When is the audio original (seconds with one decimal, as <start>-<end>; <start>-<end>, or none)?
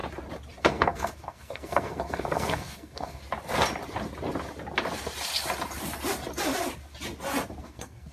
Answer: 0.0-0.6; 3.2-7.6